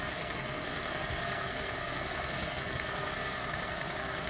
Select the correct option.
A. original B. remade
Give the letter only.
B